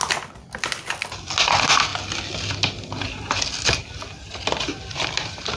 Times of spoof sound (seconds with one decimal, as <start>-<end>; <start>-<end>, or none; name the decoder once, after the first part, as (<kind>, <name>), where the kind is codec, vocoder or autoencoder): none